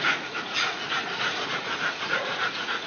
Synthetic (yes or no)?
yes